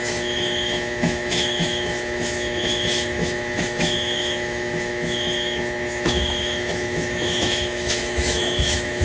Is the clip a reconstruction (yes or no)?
yes